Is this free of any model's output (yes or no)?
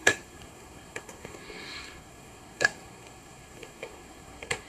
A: no